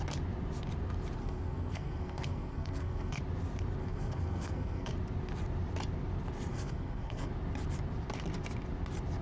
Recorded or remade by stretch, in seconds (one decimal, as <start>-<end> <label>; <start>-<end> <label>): 0.0-1.2 recorded; 1.2-3.2 remade; 3.2-3.8 recorded; 3.8-4.9 remade; 4.9-6.5 recorded; 6.5-7.3 remade; 7.3-9.2 recorded